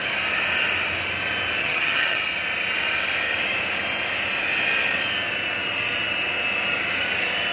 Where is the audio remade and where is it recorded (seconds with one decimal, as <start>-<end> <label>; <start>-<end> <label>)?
0.0-1.6 recorded; 1.6-2.2 remade; 2.2-7.5 recorded